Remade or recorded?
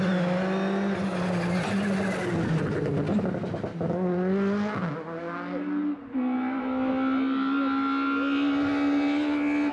recorded